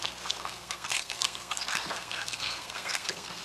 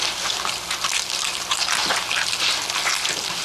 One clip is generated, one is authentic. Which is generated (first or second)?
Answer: first